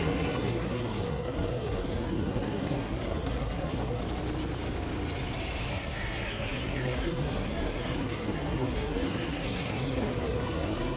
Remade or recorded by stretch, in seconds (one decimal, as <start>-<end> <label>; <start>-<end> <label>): 0.0-4.0 remade; 4.0-5.7 recorded; 5.7-11.0 remade